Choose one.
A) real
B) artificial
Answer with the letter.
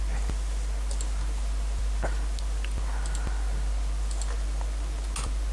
A